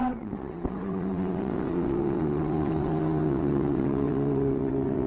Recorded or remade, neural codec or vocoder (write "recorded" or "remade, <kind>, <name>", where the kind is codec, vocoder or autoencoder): remade, vocoder, WaveNeXt